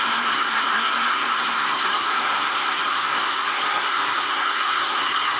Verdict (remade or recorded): remade